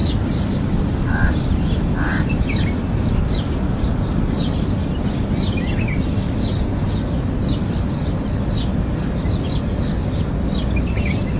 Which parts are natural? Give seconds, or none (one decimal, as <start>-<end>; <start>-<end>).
0.0-11.4